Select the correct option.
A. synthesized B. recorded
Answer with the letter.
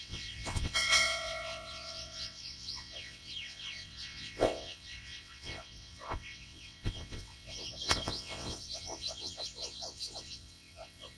A